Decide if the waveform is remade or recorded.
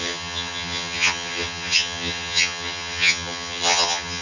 remade